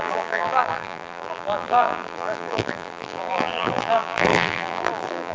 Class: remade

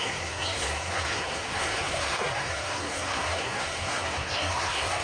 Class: remade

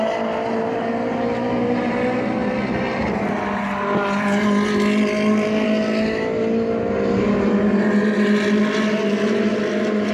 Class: recorded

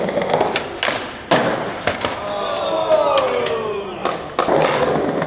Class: recorded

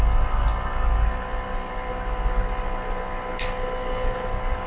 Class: recorded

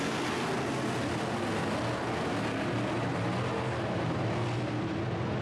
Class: recorded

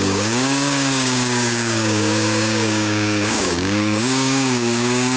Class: remade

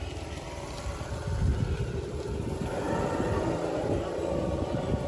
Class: recorded